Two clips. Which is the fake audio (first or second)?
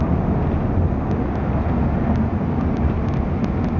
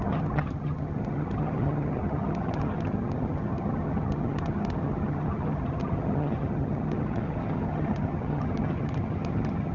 second